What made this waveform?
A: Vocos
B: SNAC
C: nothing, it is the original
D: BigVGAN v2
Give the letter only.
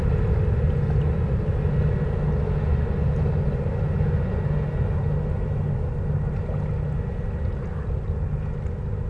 C